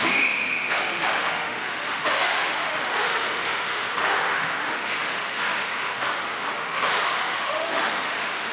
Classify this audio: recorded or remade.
remade